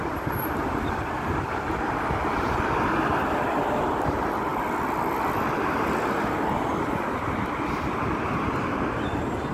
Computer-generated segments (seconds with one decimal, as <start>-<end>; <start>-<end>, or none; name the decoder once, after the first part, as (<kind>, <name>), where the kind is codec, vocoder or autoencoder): none